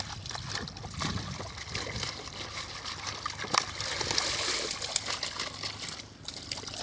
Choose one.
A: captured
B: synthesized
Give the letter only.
A